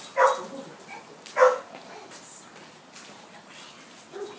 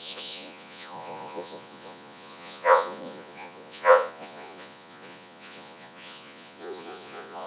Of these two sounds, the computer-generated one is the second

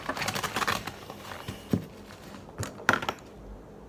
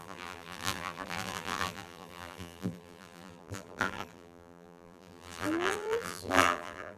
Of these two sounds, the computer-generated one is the second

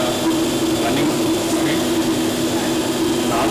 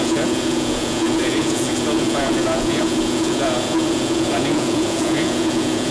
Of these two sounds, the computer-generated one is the second